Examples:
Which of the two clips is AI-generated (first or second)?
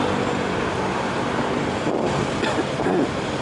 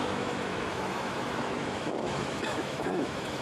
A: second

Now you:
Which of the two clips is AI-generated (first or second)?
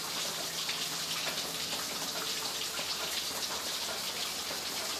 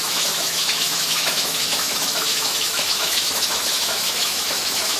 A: second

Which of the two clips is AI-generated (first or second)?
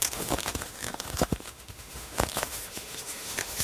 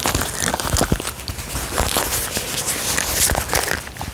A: first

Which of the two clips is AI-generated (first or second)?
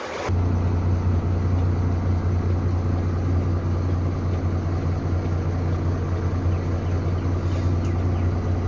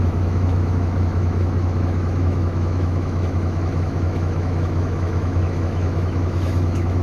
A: second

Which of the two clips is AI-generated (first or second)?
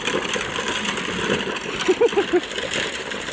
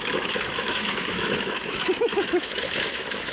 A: second